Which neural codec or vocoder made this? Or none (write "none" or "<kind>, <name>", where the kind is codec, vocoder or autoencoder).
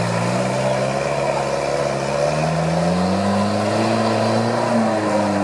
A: none